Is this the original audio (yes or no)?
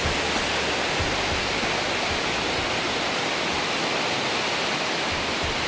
yes